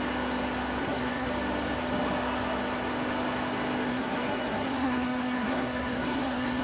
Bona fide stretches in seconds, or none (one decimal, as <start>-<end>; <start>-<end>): 0.0-0.8; 1.3-3.9

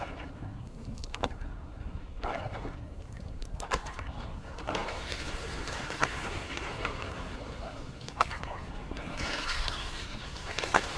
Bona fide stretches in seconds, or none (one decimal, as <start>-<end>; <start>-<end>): none

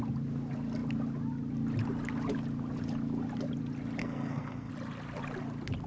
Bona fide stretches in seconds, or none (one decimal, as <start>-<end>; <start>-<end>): 0.0-4.0; 4.7-5.9

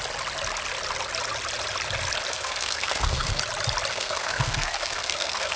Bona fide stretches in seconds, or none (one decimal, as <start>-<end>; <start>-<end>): 0.0-2.3; 3.4-3.9